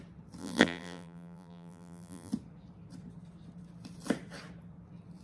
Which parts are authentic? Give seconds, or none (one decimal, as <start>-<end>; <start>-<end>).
0.0-0.4; 2.3-5.2